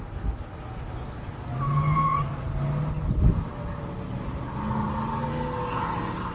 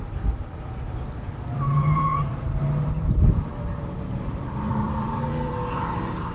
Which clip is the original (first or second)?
first